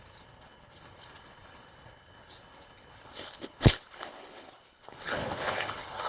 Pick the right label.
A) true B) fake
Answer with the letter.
B